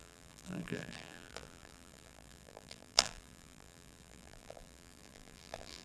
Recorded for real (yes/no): no